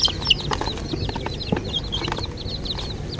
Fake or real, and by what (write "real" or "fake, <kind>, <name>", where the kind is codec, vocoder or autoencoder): real